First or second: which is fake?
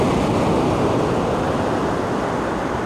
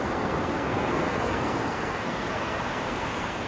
second